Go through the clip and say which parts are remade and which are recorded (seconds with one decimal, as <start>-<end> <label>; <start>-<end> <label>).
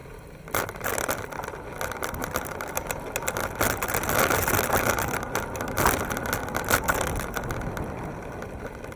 0.0-0.9 remade; 0.9-2.2 recorded; 2.2-2.9 remade; 2.9-9.0 recorded